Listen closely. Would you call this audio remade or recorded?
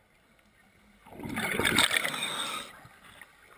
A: recorded